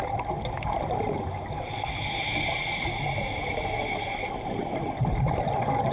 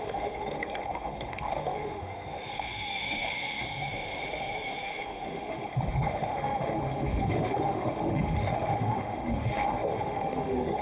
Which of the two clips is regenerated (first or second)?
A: second